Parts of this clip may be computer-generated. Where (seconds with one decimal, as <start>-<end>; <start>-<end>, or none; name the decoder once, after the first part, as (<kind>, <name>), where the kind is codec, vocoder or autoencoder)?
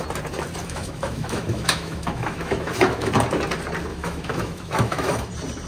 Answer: 0.6-3.1 (autoencoder, DAC-VAE); 3.9-5.3